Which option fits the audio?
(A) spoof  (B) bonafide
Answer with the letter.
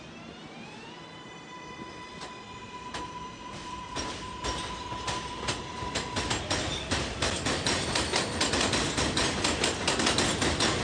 B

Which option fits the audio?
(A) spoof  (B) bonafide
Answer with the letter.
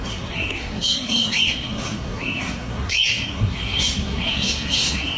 A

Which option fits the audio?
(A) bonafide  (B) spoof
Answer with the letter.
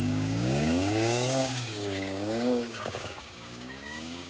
B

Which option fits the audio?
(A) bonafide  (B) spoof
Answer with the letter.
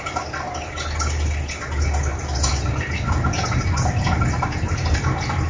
A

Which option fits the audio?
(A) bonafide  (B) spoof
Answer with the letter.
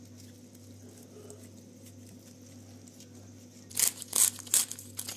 A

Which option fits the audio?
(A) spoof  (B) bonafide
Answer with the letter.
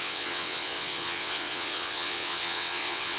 A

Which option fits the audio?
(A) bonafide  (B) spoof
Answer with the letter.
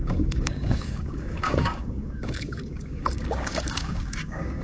B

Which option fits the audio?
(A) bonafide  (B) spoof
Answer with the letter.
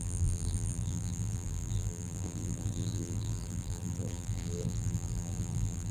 B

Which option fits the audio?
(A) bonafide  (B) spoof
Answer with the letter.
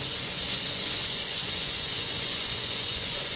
B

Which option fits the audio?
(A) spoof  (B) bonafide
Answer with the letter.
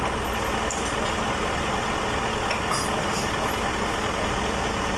B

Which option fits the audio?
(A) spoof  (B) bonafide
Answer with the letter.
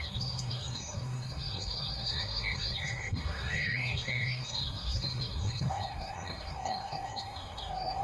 A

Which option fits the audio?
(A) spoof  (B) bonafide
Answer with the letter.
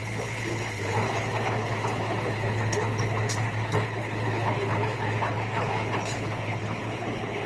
A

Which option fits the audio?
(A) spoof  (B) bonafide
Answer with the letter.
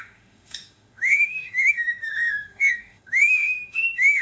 A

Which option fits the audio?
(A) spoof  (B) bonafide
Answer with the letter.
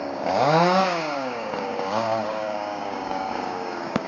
A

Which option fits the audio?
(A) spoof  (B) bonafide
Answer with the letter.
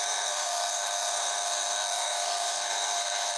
A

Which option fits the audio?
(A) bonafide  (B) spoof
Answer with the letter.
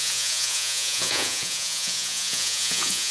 B